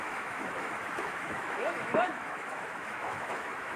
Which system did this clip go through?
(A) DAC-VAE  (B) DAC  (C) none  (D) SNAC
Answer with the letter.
A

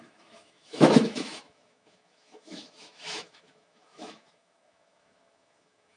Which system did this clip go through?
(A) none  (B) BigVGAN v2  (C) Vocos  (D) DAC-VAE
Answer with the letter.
D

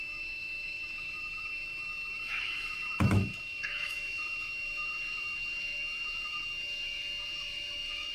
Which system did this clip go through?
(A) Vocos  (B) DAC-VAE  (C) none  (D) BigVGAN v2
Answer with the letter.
B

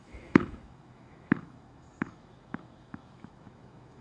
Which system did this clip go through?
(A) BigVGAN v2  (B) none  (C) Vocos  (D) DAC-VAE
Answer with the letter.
D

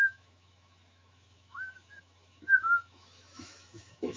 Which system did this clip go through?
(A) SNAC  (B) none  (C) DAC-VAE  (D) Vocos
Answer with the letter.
C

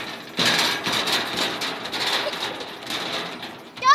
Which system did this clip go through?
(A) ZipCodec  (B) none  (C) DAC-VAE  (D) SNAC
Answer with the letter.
B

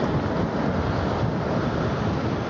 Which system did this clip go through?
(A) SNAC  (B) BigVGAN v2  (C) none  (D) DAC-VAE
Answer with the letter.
C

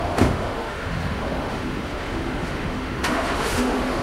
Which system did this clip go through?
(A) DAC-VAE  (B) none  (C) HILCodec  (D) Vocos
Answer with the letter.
A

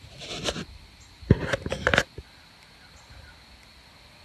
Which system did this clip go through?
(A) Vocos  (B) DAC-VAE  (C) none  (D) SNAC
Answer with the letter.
C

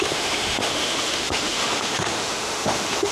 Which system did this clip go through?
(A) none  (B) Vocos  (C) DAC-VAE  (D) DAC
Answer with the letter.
C